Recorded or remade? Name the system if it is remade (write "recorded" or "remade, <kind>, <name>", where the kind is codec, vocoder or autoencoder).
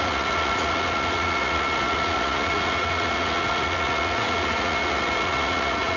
remade, vocoder, Vocos